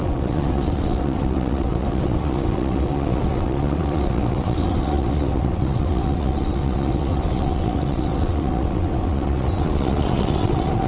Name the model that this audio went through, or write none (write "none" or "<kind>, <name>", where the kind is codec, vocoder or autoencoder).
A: vocoder, WaveNeXt